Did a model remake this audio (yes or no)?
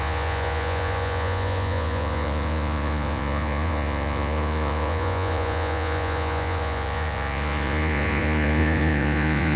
yes